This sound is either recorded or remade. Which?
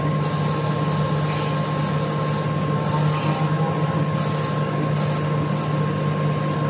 recorded